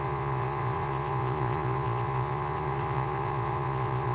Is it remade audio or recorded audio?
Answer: remade